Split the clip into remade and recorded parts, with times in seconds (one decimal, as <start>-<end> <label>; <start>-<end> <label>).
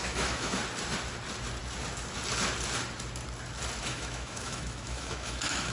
0.0-0.6 remade; 0.6-3.8 recorded; 3.8-5.7 remade